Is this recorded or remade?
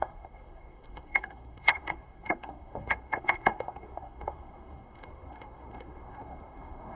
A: remade